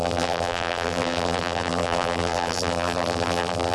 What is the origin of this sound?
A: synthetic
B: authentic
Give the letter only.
A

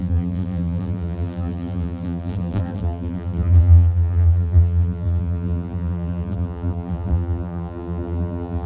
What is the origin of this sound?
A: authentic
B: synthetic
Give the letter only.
B